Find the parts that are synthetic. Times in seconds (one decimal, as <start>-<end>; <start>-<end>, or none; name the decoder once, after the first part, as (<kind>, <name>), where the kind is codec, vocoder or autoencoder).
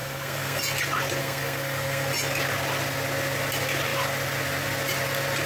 0.0-0.6 (codec, SNAC); 1.2-2.1